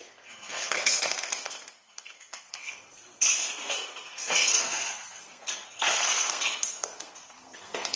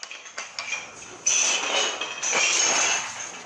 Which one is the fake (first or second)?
first